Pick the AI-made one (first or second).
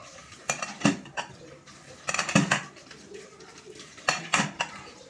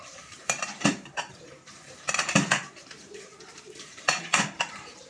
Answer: second